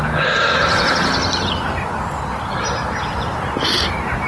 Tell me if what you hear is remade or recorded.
recorded